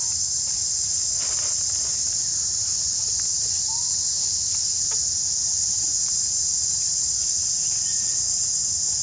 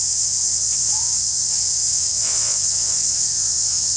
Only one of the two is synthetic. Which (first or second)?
second